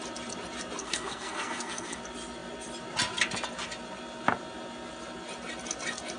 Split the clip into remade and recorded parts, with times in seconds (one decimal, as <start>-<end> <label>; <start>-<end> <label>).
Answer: 0.0-0.8 recorded; 0.8-2.0 remade; 2.0-6.2 recorded